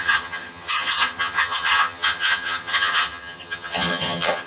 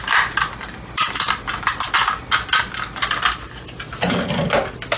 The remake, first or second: first